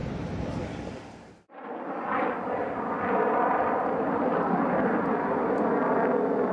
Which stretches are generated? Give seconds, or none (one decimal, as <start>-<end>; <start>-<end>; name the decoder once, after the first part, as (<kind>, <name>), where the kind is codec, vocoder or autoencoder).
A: none